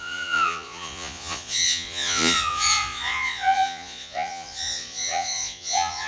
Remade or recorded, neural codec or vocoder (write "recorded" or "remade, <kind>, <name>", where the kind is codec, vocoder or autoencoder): remade, vocoder, Vocos